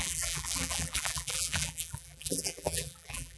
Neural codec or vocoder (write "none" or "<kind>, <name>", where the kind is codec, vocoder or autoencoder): vocoder, BigVGAN v2